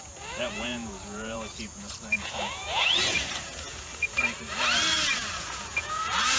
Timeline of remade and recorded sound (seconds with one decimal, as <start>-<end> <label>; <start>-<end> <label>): 0.0-4.2 remade; 4.2-4.9 recorded; 4.9-6.4 remade